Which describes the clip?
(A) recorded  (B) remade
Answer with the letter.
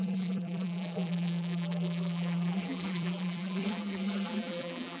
B